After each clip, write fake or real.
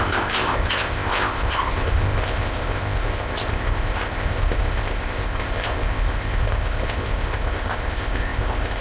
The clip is fake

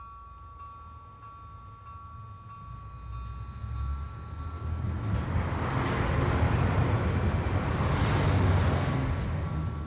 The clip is real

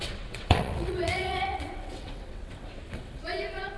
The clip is fake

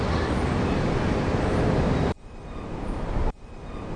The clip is real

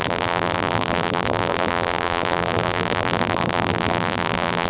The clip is fake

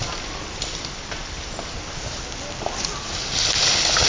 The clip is real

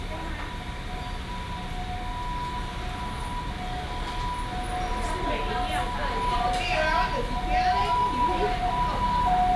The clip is real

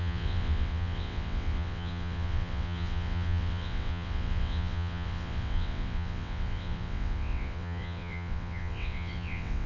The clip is fake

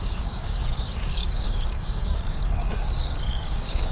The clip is fake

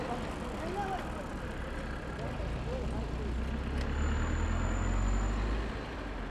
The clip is real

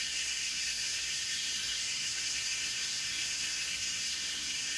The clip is fake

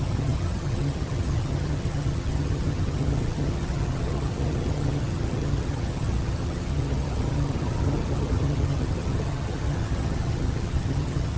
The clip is fake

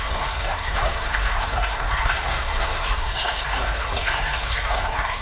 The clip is fake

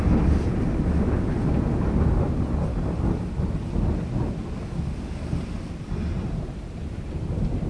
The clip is real